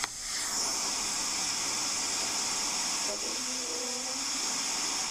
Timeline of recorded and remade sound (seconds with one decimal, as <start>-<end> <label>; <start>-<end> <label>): 0.0-5.1 recorded